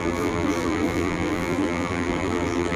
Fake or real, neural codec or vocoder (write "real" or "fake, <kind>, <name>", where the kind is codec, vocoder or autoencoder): fake, vocoder, BigVGAN v2